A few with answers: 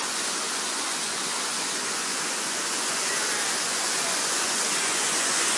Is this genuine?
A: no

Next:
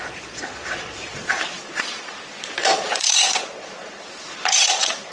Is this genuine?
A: no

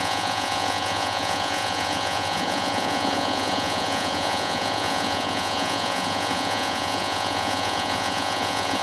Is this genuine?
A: no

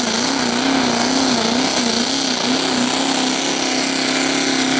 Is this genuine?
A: yes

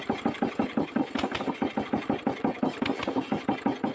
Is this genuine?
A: yes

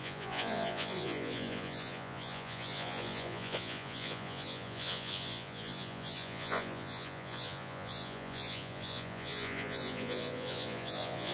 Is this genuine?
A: no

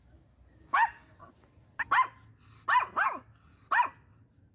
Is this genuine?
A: yes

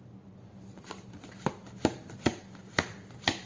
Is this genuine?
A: yes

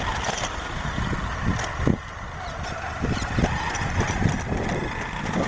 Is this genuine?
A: yes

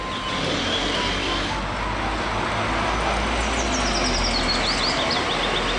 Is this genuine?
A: yes